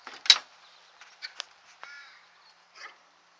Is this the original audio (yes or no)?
yes